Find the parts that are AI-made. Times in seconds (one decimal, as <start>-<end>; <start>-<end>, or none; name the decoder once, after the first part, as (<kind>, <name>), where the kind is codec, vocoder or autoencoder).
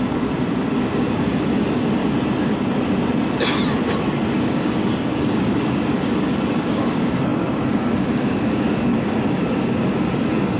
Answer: 0.0-2.0 (codec, DAC); 4.4-10.6